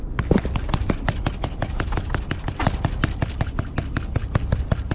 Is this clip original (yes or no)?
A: yes